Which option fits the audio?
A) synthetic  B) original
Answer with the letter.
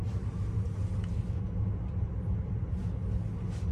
B